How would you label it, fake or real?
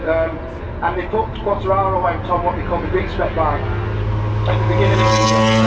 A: real